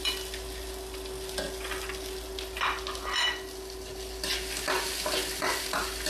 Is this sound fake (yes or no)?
no